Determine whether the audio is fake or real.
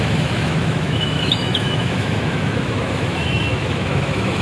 fake